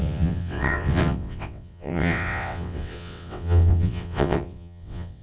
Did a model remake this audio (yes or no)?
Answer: yes